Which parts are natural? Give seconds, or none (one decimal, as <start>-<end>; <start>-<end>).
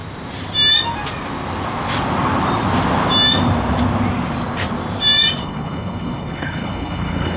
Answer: 0.0-5.4